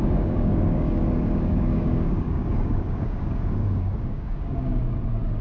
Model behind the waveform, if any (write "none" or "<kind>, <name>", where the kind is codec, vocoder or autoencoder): codec, DAC